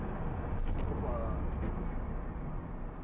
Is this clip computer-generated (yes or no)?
no